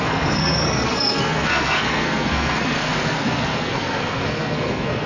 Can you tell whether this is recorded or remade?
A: remade